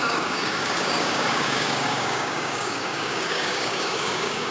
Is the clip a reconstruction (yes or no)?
yes